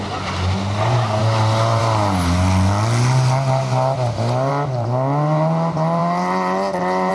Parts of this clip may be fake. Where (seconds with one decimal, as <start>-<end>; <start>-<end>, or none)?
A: none